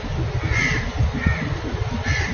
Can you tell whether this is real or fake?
real